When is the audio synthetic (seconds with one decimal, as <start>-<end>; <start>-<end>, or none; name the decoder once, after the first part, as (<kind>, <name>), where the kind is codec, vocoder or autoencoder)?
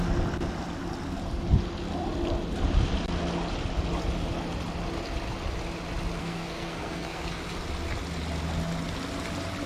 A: 6.2-7.4 (codec, SNAC)